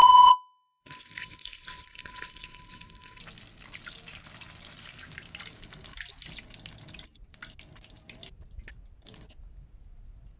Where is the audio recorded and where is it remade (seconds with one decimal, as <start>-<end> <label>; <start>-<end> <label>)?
0.0-3.2 remade; 3.2-10.4 recorded